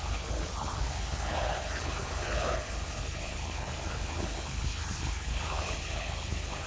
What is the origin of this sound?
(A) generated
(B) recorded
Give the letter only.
A